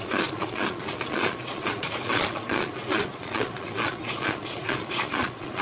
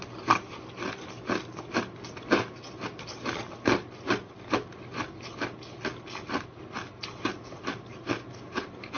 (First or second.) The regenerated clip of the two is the first